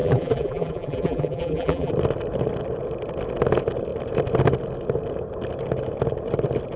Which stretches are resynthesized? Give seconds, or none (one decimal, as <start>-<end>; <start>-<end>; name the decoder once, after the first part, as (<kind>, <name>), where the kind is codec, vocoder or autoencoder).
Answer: 0.0-1.9 (vocoder, BigVGAN v2)